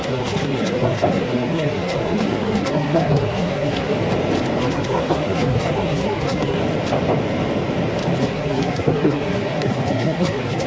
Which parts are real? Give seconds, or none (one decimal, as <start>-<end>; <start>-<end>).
4.0-4.6; 6.6-8.2